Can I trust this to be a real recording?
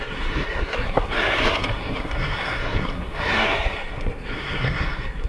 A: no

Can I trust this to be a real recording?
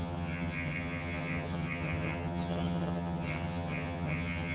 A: no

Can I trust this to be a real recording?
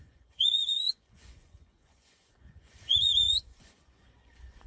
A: no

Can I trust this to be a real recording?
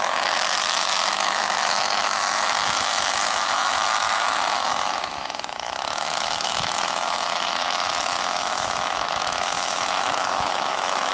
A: no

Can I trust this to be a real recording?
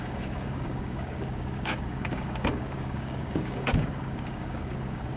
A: no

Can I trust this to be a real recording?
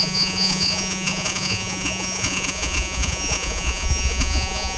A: no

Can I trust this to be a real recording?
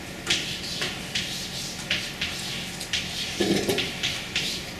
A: yes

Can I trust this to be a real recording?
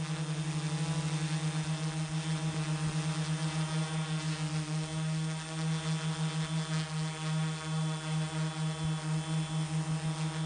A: yes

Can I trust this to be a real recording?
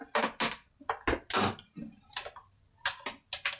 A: yes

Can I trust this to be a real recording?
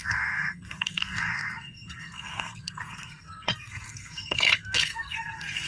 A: no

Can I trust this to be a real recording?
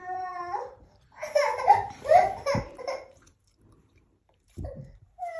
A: no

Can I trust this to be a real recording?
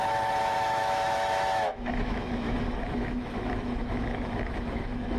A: no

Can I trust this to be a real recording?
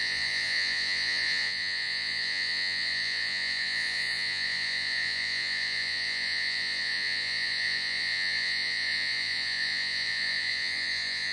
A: no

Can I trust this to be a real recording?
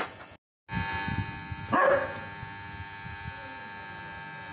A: yes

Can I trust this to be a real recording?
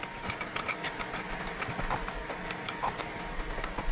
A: yes